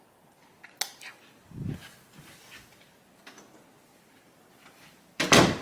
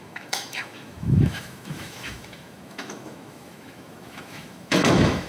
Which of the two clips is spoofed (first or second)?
second